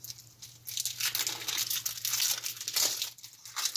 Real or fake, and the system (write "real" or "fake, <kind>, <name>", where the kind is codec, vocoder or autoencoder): real